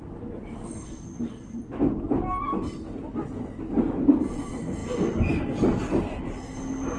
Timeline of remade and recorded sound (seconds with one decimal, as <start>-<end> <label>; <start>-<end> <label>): 0.0-7.0 recorded